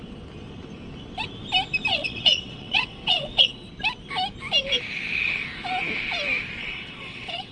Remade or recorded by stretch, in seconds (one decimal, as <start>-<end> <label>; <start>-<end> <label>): 0.0-1.9 recorded; 1.9-3.7 remade; 3.7-6.6 recorded; 6.6-7.5 remade